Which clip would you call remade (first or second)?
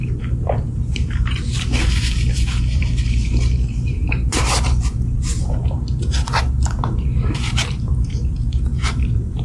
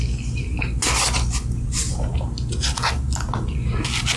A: first